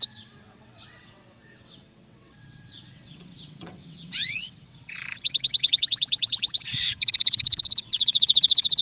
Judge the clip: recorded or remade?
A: remade